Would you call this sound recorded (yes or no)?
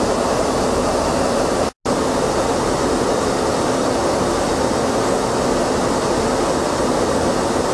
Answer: yes